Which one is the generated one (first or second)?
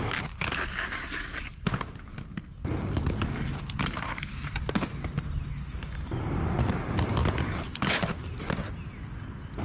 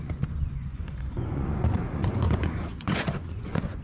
second